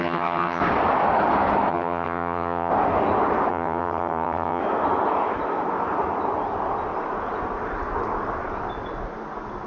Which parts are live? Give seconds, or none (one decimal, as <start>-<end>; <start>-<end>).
0.6-1.7; 2.7-3.5; 4.6-9.7